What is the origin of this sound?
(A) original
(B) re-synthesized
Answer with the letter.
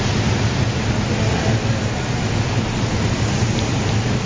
A